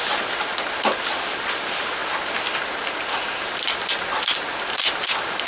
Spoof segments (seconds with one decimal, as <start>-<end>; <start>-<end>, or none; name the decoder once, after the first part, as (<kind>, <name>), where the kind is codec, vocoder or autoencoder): none

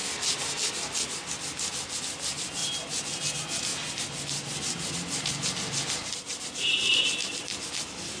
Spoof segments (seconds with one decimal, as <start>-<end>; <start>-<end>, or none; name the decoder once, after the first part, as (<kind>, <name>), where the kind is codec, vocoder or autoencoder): 2.0-2.6 (vocoder, BigVGAN v2); 3.2-3.7; 4.9-8.2

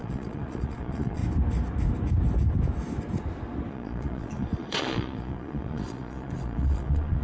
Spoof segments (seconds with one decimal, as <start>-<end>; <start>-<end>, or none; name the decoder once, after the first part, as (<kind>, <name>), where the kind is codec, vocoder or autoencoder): 0.0-1.2 (vocoder, Vocos); 3.7-7.2

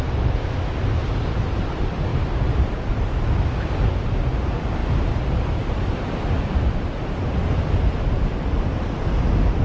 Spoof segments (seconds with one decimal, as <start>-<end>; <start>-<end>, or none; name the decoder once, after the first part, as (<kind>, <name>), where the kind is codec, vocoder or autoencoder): none